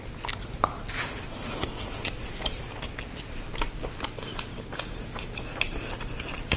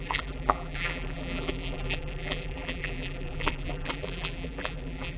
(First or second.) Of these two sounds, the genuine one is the first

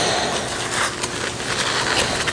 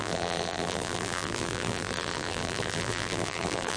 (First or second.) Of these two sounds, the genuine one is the first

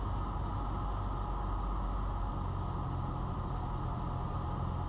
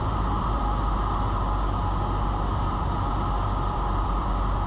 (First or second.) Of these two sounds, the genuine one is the first